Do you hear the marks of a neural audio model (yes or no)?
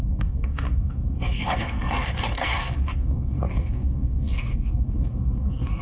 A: yes